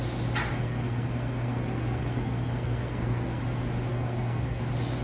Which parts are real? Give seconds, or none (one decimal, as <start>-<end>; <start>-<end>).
0.0-0.5; 3.4-3.9; 4.6-5.0